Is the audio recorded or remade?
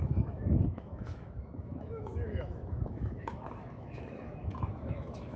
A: remade